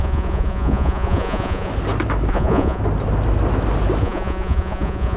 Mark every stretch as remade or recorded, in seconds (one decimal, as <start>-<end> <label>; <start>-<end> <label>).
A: 0.0-1.7 remade; 1.7-2.3 recorded; 2.3-2.8 remade; 2.8-4.0 recorded; 4.0-5.2 remade